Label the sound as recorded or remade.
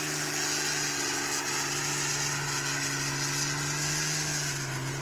recorded